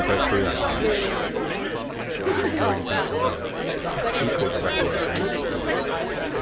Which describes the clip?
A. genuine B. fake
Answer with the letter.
A